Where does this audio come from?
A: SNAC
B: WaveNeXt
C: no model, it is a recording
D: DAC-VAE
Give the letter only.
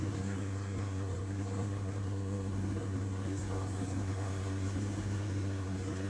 A